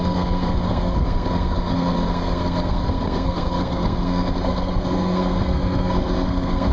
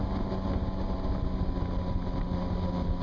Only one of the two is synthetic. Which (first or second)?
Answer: first